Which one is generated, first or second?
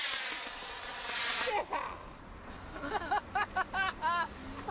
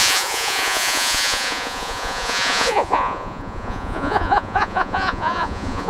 second